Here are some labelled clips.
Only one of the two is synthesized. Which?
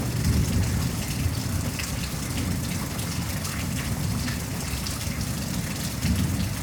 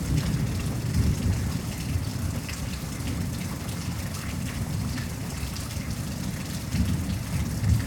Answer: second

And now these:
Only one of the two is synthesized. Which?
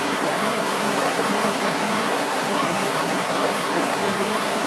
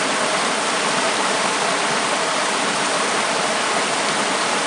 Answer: first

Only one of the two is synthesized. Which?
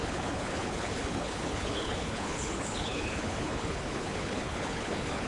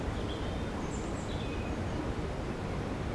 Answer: first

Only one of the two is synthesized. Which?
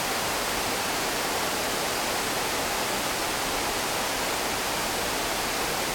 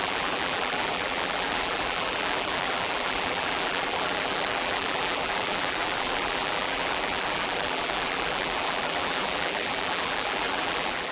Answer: second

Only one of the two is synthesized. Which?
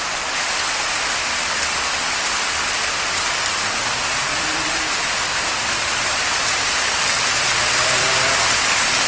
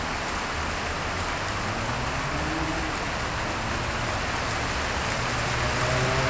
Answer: first